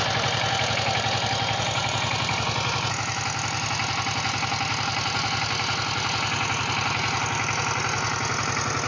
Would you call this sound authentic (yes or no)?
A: yes